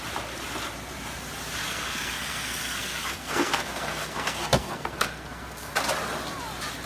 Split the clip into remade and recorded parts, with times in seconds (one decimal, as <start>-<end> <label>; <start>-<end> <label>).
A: 0.0-1.6 recorded; 1.6-5.7 remade; 5.7-6.9 recorded